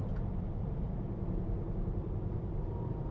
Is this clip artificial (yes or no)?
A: no